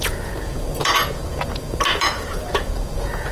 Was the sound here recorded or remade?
remade